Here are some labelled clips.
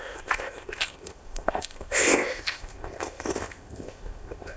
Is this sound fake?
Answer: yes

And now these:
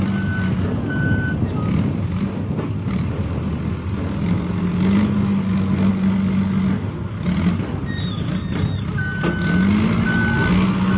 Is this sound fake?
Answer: no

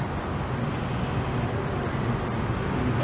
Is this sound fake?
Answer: no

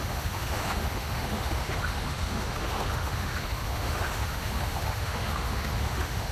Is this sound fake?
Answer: yes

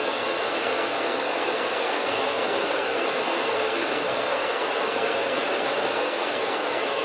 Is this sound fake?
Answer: yes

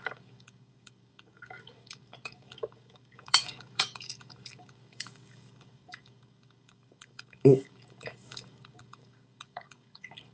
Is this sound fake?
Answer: yes